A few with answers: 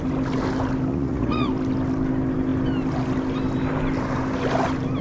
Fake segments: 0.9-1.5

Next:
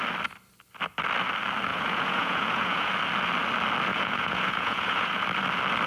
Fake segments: 1.7-2.9; 3.9-5.2

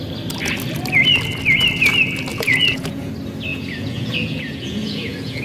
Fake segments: 2.3-3.1; 3.5-5.4

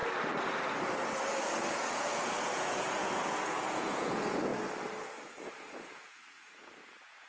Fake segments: 1.8-4.5; 5.4-7.3

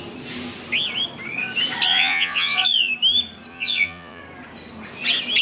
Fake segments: 1.9-2.9; 3.5-4.2